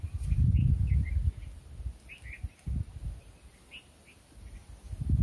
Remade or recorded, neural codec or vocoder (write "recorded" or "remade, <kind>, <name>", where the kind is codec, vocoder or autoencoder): recorded